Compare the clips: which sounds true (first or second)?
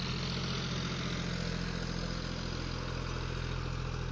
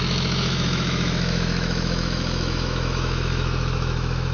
first